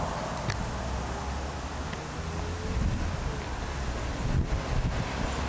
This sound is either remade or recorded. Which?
recorded